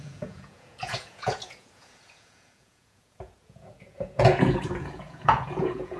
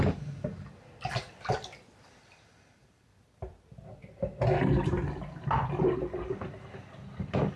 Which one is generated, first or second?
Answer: first